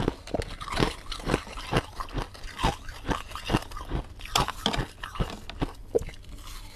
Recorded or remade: recorded